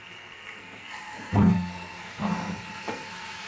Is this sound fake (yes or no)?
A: yes